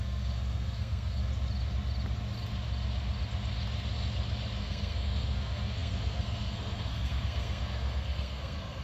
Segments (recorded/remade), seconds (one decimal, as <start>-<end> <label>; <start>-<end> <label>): 0.0-1.2 remade; 1.2-4.6 recorded; 4.6-8.8 remade